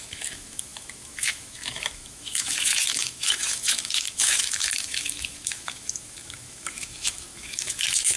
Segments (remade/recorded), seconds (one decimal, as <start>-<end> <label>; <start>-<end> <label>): 0.0-8.2 remade